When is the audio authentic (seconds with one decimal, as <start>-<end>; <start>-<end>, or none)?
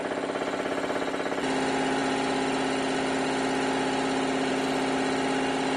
0.0-5.8